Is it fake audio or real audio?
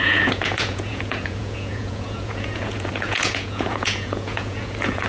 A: fake